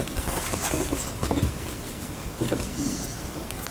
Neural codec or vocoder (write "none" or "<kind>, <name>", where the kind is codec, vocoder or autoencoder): codec, SNAC